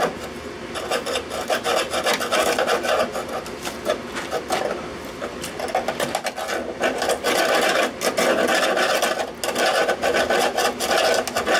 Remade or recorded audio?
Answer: recorded